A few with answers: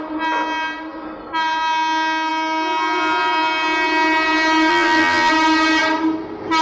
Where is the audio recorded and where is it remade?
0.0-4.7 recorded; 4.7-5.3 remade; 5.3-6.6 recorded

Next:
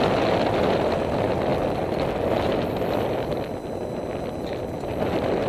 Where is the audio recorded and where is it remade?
0.0-5.5 recorded

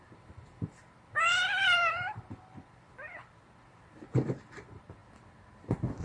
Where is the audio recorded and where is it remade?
0.0-5.0 remade; 5.0-6.0 recorded

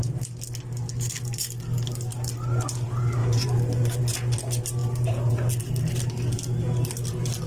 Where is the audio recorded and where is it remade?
0.0-3.2 recorded; 3.2-4.0 remade; 4.0-4.8 recorded; 4.8-5.3 remade; 5.3-7.5 recorded

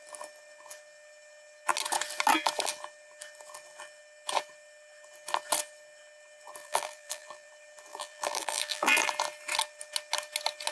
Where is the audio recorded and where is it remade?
0.0-6.6 recorded; 6.6-7.5 remade; 7.5-7.9 recorded; 7.9-9.1 remade; 9.1-10.7 recorded